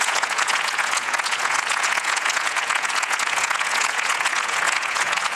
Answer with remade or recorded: remade